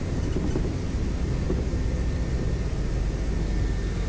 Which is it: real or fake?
real